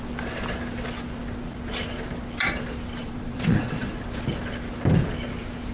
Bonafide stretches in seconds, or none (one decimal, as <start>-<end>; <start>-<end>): 0.0-3.0; 3.9-5.7